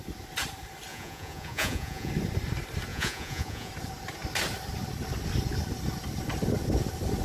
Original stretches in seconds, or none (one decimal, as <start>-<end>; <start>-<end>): 0.0-0.9; 2.1-2.9; 3.7-7.2